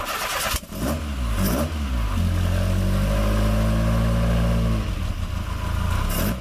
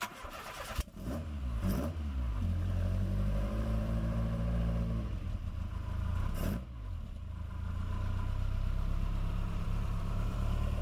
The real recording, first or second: first